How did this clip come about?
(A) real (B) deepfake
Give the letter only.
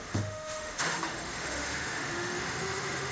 B